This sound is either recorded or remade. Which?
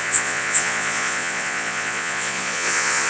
remade